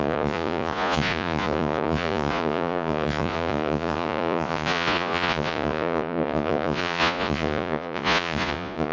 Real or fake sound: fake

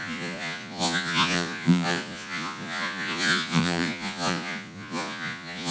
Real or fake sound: fake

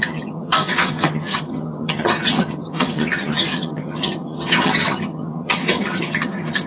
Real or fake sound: fake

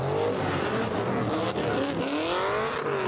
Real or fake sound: real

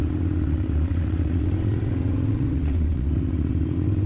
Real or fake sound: fake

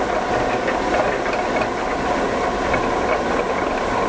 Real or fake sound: real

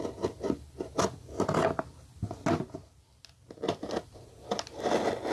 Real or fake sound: real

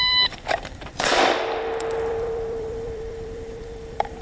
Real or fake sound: fake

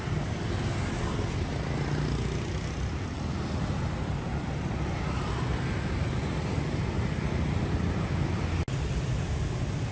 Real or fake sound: real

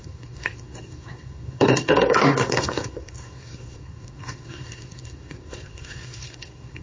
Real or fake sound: fake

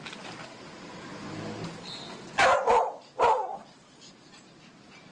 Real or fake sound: real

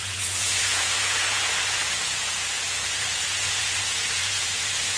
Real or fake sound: fake